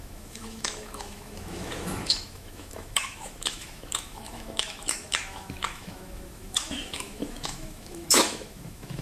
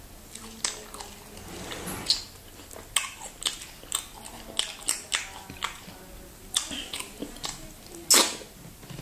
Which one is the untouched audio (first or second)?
second